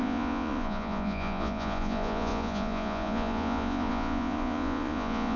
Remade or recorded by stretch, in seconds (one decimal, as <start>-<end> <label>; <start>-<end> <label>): 0.0-5.4 remade